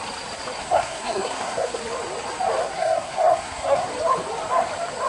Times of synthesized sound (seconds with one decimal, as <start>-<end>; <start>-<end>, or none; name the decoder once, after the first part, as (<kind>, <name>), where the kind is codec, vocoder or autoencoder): 0.6-1.8 (codec, SNAC); 2.6-3.9